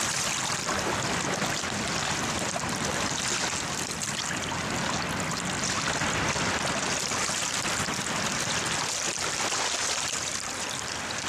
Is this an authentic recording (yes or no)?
yes